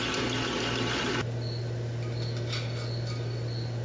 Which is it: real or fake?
real